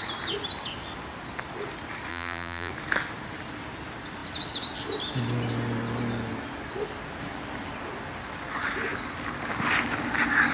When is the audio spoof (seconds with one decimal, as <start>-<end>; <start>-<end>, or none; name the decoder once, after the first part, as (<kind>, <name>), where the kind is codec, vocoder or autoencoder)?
2.1-2.7 (vocoder, BigVGAN v2)